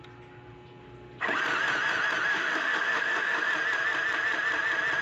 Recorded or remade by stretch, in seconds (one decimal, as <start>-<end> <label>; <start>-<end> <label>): 0.0-2.3 recorded; 2.3-3.5 remade; 3.5-5.0 recorded